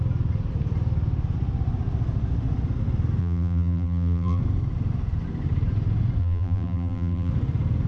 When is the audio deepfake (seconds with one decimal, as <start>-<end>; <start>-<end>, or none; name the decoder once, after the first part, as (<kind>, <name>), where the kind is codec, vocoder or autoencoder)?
3.2-4.4 (vocoder, BigVGAN v2); 6.2-7.3